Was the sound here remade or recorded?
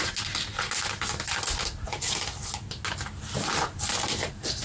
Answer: recorded